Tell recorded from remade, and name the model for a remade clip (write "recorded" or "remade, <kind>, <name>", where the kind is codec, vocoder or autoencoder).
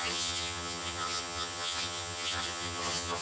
remade, vocoder, HiFi-GAN